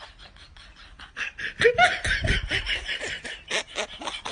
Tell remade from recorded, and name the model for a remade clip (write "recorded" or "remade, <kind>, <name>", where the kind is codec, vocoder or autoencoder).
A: recorded